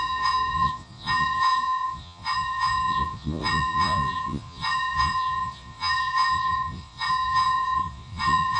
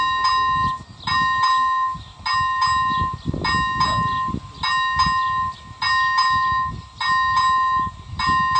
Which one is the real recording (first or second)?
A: second